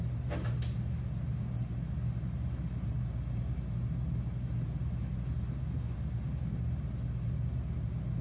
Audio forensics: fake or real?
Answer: real